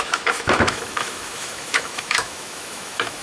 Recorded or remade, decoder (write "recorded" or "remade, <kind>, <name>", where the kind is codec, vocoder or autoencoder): remade, autoencoder, DAC-VAE